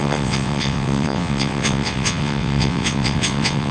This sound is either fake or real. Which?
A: fake